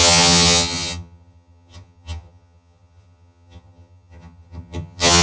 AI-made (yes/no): yes